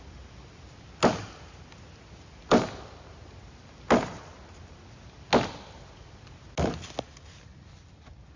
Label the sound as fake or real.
real